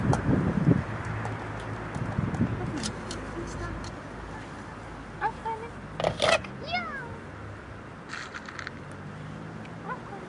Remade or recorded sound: recorded